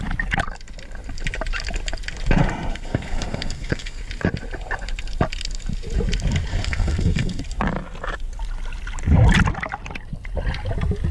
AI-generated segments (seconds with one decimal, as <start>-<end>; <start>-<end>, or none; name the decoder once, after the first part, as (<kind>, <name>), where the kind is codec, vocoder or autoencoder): 2.7-4.0 (codec, SNAC); 6.5-7.4